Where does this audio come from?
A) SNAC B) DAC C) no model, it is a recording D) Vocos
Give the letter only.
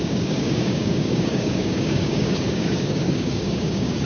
B